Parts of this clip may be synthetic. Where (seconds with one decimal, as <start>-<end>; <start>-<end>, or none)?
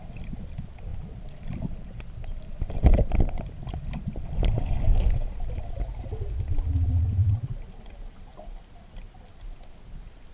0.9-3.1